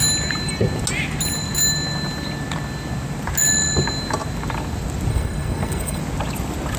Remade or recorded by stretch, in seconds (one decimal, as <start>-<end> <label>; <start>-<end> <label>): 0.0-5.1 recorded; 5.1-6.0 remade; 6.0-6.8 recorded